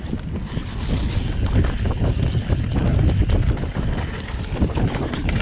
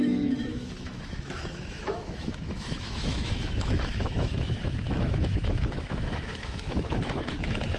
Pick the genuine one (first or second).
first